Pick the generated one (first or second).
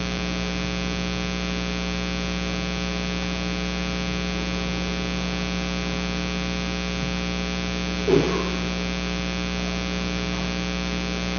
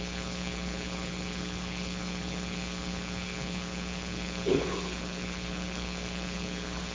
second